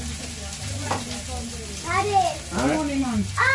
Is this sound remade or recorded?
recorded